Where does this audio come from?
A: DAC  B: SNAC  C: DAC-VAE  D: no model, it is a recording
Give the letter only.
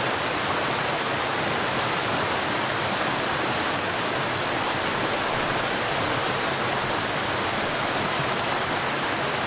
D